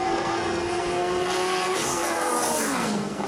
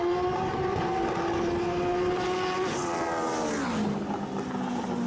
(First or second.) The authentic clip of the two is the second